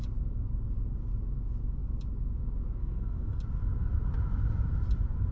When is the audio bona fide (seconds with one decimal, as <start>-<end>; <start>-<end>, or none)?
0.0-2.8; 3.4-5.3